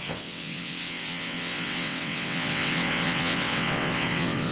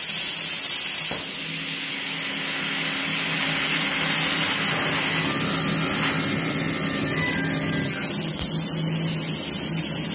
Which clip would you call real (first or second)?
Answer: second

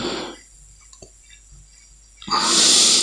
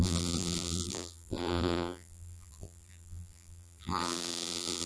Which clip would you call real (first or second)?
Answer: first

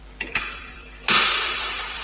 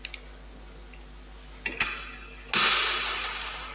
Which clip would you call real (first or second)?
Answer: second